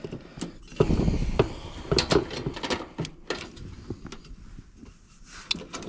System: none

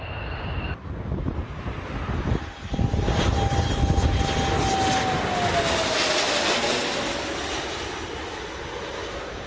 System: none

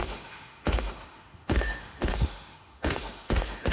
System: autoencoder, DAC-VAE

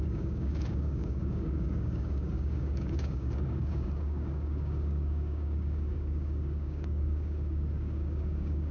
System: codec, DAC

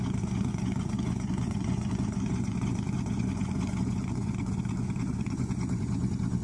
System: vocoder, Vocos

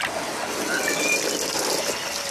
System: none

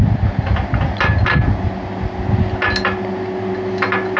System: none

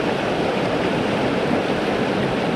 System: none